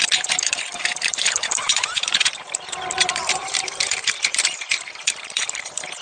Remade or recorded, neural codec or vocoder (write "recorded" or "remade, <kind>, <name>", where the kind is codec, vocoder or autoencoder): remade, vocoder, BigVGAN v2